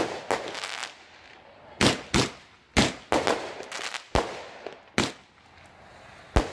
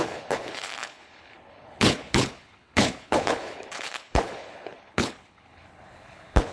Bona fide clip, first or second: first